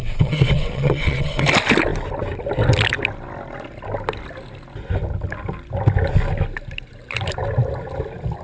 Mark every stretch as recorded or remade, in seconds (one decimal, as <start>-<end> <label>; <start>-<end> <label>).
0.0-1.4 remade; 1.4-8.4 recorded